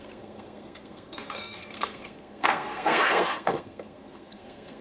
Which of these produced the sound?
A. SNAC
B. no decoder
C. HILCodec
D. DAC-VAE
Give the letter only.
A